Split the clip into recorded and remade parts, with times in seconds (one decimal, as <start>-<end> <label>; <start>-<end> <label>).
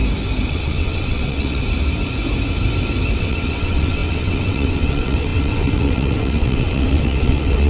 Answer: 0.0-0.5 recorded; 0.5-1.6 remade; 1.6-3.2 recorded; 3.2-7.7 remade